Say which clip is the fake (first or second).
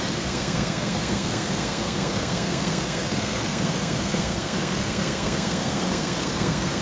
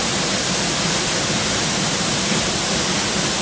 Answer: first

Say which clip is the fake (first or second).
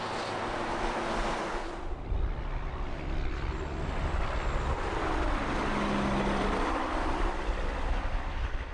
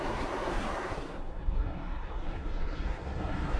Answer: second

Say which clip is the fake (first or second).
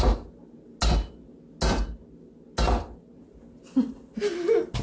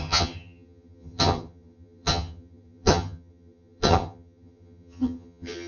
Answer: second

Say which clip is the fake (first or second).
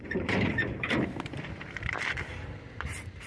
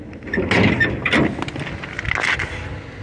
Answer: first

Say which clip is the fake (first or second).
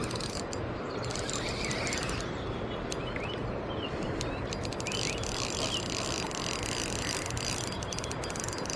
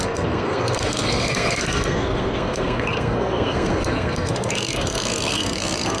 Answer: second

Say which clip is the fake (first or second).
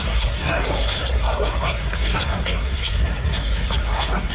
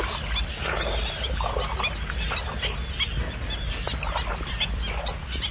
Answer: first